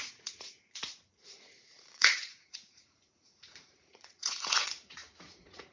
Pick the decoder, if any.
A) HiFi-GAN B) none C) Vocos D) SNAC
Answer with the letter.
C